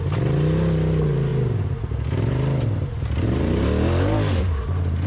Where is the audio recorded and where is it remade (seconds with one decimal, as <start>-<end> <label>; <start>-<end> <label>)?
0.0-5.1 recorded